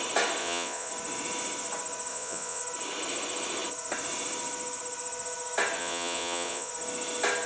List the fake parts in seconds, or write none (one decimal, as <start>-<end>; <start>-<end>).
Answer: 0.4-0.9; 2.1-2.6; 5.8-6.7